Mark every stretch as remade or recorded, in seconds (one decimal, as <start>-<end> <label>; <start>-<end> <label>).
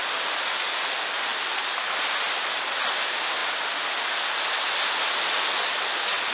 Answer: 0.0-6.3 recorded